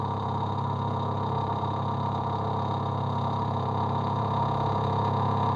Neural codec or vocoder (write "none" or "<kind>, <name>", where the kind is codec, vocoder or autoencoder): vocoder, Vocos